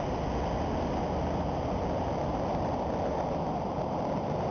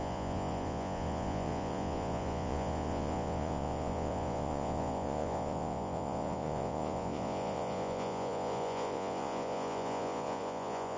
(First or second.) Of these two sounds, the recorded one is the first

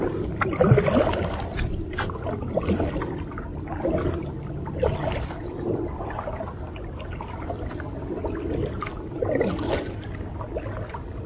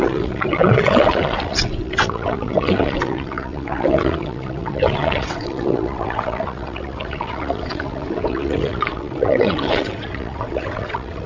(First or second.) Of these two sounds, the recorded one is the first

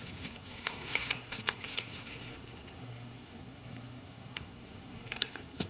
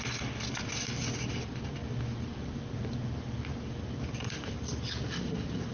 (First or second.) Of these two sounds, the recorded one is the second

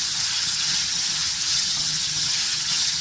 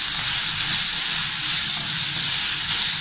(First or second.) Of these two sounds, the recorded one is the second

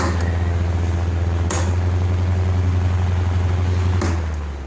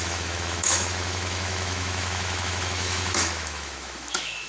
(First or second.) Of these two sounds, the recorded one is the first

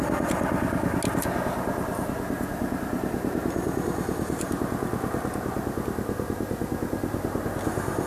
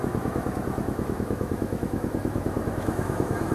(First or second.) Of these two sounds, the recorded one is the first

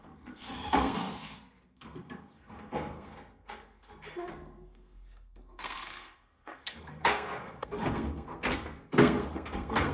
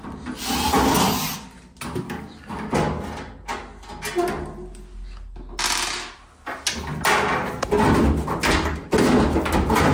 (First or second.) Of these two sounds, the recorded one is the second